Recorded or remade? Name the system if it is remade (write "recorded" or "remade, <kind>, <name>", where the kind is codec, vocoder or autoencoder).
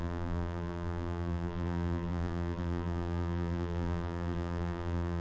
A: remade, vocoder, BigVGAN v2